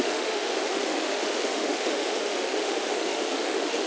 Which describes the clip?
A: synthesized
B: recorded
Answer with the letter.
A